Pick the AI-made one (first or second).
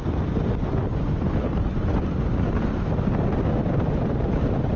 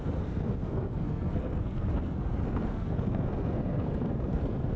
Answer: second